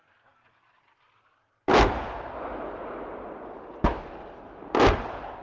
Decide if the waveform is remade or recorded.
recorded